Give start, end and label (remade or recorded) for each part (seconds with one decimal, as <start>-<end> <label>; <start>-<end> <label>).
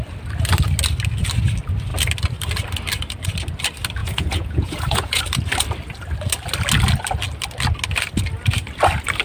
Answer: 0.0-4.0 recorded; 4.0-5.2 remade; 5.2-9.2 recorded